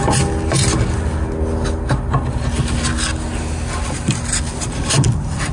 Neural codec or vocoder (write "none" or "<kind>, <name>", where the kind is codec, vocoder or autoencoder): none